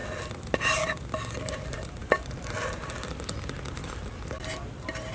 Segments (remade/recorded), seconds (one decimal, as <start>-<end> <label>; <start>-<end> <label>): 0.0-1.5 recorded; 1.5-5.1 remade